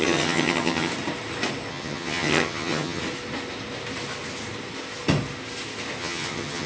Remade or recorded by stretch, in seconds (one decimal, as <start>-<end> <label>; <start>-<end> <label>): 0.0-0.9 remade; 0.9-1.7 recorded; 1.7-3.0 remade; 3.0-6.0 recorded; 6.0-6.7 remade